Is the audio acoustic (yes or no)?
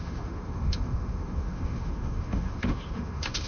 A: no